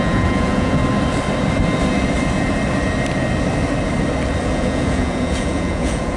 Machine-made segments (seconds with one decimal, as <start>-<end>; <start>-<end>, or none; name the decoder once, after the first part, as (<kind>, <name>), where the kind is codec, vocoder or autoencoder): 0.0-0.8 (vocoder, Vocos); 4.5-6.2